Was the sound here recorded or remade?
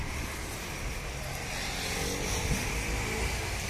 recorded